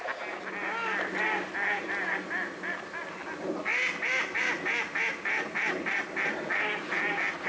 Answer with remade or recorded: recorded